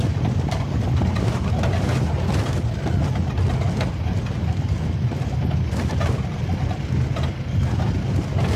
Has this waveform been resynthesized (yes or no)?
no